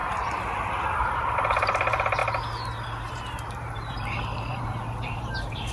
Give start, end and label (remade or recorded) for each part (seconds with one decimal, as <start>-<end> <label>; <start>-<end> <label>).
0.0-0.9 recorded; 0.9-2.2 remade; 2.2-3.1 recorded; 3.1-5.7 remade